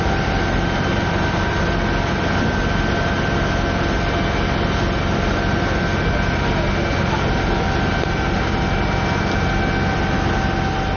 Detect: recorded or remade recorded